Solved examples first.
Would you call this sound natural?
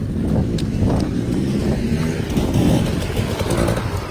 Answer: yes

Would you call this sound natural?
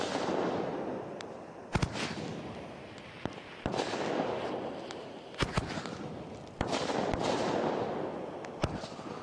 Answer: yes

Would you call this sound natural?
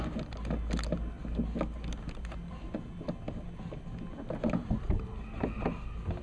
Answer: yes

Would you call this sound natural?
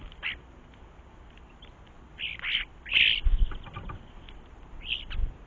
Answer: yes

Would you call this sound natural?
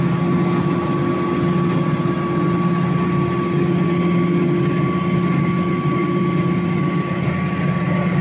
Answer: yes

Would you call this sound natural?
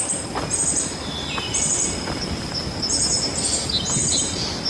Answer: yes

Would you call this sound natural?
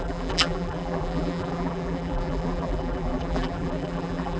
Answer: no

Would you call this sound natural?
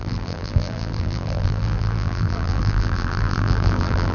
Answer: no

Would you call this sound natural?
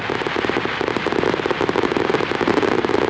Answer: yes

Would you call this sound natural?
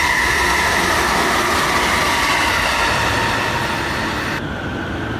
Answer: yes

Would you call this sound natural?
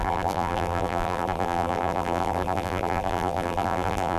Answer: no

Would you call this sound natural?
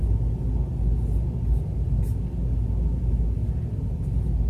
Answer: yes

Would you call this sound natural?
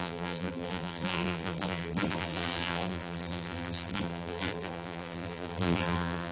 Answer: no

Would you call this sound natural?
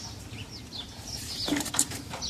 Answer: no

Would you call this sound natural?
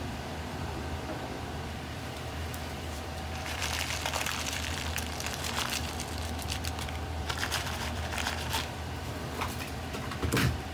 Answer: no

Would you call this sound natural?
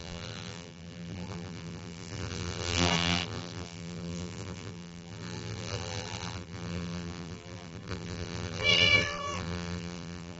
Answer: no